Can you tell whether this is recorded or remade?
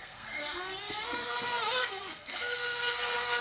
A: remade